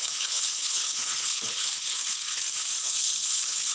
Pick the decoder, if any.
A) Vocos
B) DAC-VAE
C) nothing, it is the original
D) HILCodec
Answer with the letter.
D